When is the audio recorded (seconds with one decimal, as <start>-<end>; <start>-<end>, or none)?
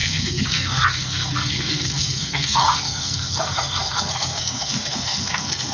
none